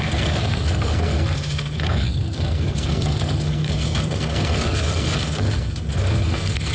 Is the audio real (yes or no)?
no